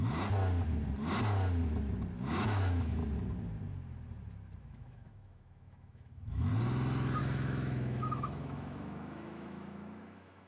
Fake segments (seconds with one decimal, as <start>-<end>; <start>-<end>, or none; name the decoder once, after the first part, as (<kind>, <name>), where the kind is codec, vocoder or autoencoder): 2.4-3.0 (autoencoder, DAC-VAE); 4.6-6.5; 7.2-10.5